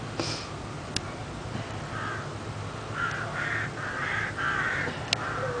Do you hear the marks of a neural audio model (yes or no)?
no